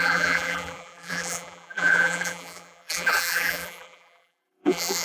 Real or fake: fake